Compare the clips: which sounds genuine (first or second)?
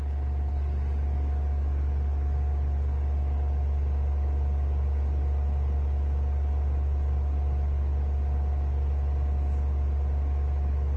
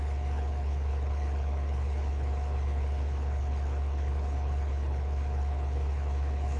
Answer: first